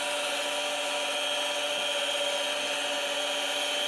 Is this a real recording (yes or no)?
yes